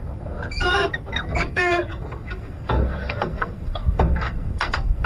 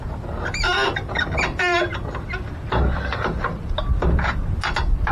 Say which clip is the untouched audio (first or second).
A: second